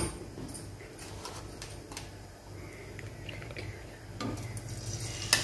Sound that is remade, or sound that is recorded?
recorded